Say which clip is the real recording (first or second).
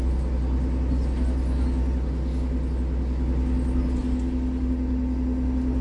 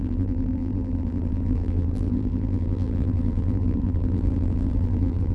first